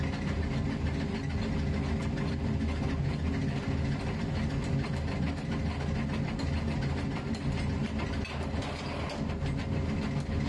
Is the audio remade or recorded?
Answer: recorded